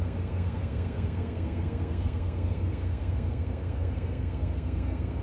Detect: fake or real fake